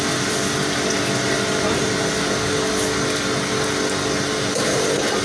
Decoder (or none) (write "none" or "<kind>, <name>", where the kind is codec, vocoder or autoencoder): none